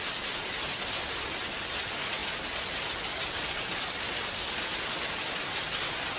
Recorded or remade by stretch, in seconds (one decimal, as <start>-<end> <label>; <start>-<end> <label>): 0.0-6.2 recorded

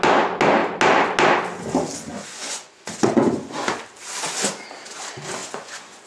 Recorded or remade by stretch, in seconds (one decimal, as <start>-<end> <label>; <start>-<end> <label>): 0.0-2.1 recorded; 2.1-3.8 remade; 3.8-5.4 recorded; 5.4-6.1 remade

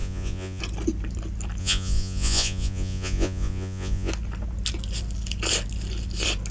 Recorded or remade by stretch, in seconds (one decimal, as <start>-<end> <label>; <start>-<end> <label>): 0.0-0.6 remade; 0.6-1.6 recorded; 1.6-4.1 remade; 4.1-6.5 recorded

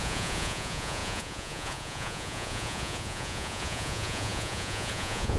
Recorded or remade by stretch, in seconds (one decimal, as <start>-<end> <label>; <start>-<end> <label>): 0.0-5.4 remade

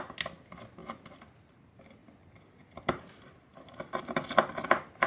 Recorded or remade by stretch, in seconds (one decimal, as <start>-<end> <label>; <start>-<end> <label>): 0.0-5.1 recorded

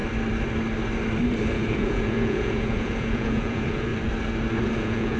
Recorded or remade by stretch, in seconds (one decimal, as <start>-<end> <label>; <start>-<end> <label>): 0.0-1.5 recorded; 1.5-3.9 remade; 3.9-4.6 recorded; 4.6-5.2 remade

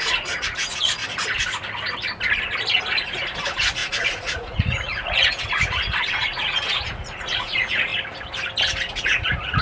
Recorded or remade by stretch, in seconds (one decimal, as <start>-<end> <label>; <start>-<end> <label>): 0.0-1.0 remade; 1.0-2.8 recorded; 2.8-7.9 remade; 7.9-8.9 recorded; 8.9-9.6 remade

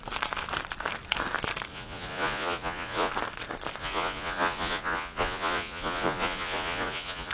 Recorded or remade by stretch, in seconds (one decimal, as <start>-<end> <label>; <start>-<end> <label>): 0.0-1.7 recorded; 1.7-3.1 remade; 3.1-3.8 recorded; 3.8-7.3 remade